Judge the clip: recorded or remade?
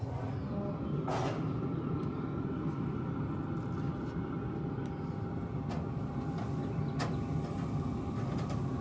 recorded